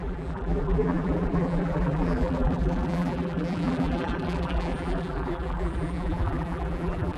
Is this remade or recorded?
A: remade